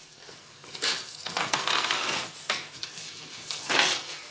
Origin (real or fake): fake